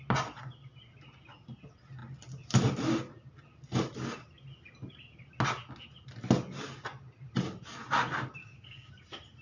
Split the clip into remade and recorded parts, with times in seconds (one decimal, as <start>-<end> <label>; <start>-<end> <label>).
0.0-8.4 recorded; 8.4-8.9 remade; 8.9-9.4 recorded